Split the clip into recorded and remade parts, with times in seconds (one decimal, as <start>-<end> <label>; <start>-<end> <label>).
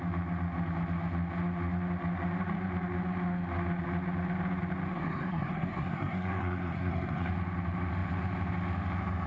0.0-4.9 recorded; 4.9-7.3 remade; 7.3-9.3 recorded